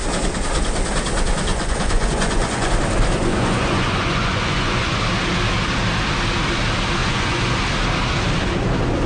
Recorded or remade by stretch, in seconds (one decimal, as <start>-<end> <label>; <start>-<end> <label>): 0.0-1.5 recorded; 1.5-2.7 remade; 2.7-3.2 recorded; 3.2-5.0 remade; 5.0-7.0 recorded; 7.0-7.6 remade; 7.6-9.1 recorded